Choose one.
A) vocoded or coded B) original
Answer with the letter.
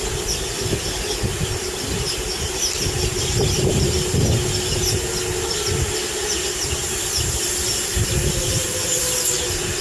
B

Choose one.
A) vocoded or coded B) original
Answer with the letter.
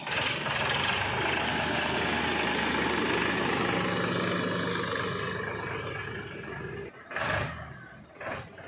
B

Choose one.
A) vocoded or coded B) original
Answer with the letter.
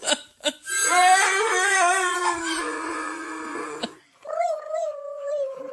A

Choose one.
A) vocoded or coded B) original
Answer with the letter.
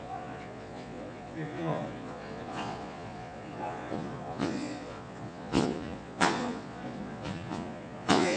A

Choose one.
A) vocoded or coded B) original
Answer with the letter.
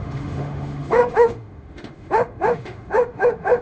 A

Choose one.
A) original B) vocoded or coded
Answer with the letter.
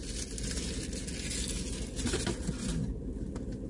A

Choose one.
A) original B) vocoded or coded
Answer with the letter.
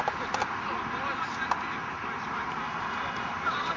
A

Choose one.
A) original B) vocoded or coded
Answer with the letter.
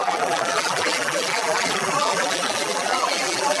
B